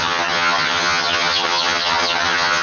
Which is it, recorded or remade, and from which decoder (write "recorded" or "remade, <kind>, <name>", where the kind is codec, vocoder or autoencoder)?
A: remade, vocoder, HiFi-GAN